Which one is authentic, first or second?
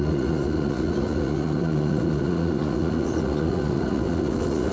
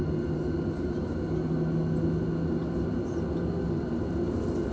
second